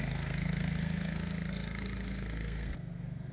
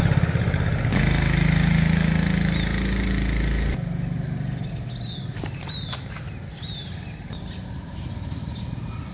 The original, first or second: second